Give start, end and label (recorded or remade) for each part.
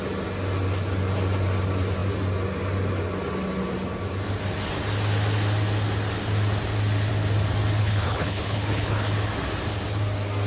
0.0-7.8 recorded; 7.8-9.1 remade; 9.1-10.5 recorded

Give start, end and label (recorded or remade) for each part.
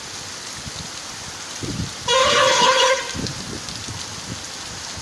0.0-2.2 recorded; 2.2-3.0 remade; 3.0-5.0 recorded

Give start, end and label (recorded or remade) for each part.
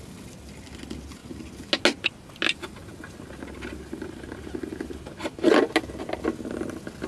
0.0-7.1 recorded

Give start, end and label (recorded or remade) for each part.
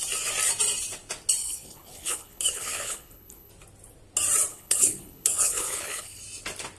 0.0-1.4 recorded; 1.4-3.5 remade; 3.5-4.5 recorded; 4.5-6.2 remade; 6.2-6.8 recorded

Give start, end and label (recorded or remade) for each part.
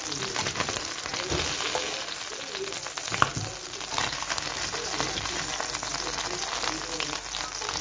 0.0-7.8 recorded